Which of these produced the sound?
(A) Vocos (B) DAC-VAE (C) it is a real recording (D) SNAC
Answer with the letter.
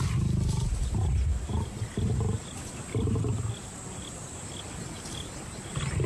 C